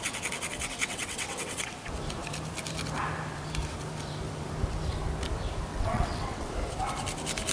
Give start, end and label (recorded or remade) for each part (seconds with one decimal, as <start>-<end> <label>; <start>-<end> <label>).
0.0-0.8 recorded; 0.8-1.7 remade; 1.7-5.7 recorded; 5.7-6.5 remade; 6.5-7.5 recorded